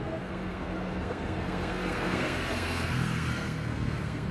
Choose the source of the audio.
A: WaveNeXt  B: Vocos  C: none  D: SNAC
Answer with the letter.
D